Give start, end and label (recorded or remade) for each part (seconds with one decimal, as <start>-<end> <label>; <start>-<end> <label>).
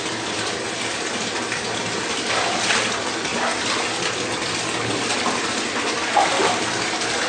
0.0-7.3 recorded